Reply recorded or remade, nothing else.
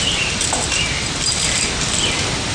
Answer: recorded